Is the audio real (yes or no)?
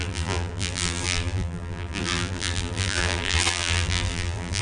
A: no